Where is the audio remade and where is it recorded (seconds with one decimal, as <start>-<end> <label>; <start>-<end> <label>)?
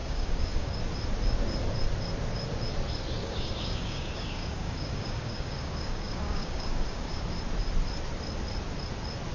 0.0-0.8 remade; 0.8-3.2 recorded; 3.2-7.2 remade; 7.2-9.3 recorded